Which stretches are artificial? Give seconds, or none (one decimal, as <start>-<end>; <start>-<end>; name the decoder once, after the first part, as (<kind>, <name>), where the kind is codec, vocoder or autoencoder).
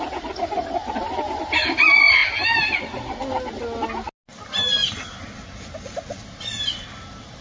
none